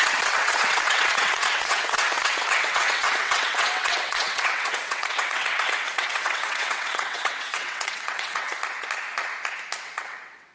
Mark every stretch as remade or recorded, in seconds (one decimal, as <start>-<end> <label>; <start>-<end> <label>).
0.0-8.5 remade; 8.5-9.8 recorded; 9.8-10.5 remade